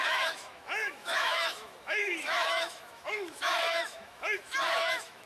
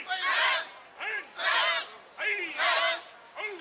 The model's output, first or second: first